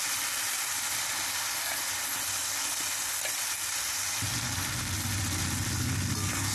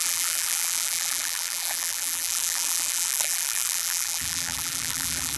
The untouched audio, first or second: first